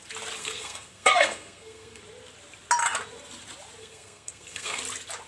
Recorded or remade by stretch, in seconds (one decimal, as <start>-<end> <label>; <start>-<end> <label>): 0.0-0.4 recorded; 0.4-2.0 remade; 2.0-3.8 recorded; 3.8-4.8 remade; 4.8-5.3 recorded